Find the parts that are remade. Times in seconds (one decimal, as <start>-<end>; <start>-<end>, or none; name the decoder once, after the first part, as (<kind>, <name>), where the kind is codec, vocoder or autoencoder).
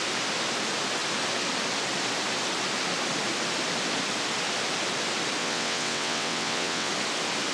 5.4-6.9 (vocoder, WaveNeXt)